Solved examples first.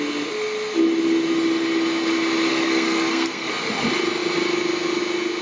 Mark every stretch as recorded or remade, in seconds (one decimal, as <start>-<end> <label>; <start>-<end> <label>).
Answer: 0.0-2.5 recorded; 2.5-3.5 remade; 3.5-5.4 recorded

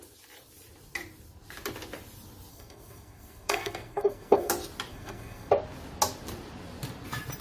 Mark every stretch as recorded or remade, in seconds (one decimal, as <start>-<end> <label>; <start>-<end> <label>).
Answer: 0.0-2.5 recorded; 2.5-4.5 remade; 4.5-4.9 recorded; 4.9-5.5 remade; 5.5-7.4 recorded

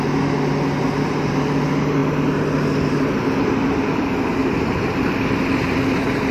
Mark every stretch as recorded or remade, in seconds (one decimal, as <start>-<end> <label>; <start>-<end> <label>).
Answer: 0.0-6.3 recorded

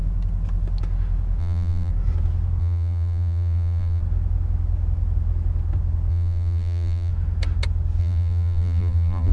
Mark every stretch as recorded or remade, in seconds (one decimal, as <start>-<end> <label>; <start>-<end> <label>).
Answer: 0.0-1.4 recorded; 1.4-1.9 remade; 1.9-2.6 recorded; 2.6-4.0 remade; 4.0-6.1 recorded; 6.1-7.1 remade; 7.1-8.0 recorded; 8.0-9.3 remade

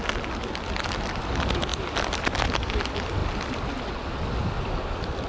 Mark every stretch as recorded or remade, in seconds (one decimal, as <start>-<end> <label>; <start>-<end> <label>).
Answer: 0.0-5.3 recorded